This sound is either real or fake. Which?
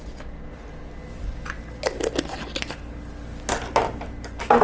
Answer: real